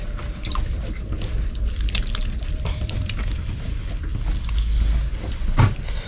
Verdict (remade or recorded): remade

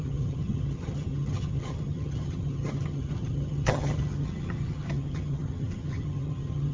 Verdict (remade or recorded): remade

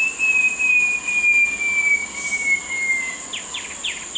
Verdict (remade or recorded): recorded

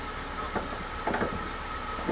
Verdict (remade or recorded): recorded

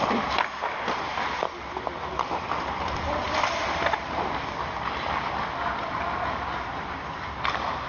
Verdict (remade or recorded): recorded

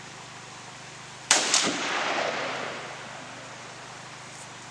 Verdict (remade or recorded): recorded